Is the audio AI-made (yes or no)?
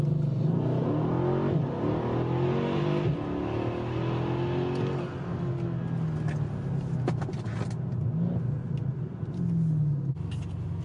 no